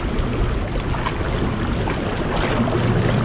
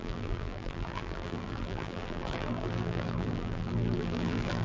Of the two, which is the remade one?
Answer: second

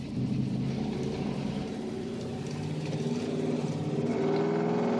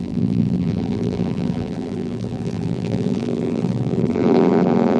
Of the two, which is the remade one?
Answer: second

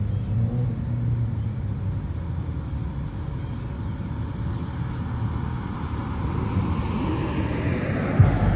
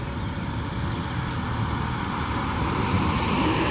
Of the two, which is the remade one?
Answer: second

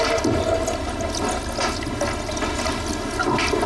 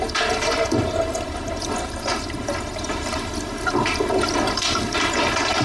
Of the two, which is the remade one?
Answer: second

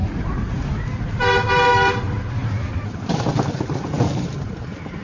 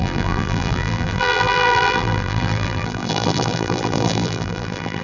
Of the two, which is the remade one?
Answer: second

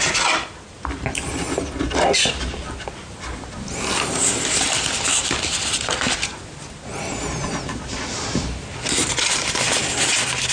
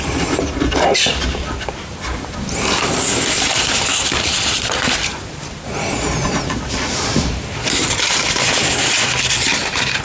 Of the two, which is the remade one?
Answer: second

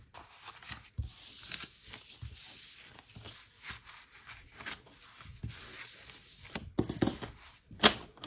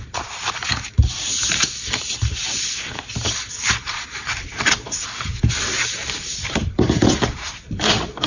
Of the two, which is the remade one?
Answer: second